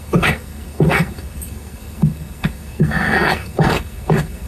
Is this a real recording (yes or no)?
no